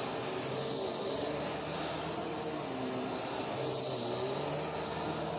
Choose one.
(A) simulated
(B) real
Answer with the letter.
B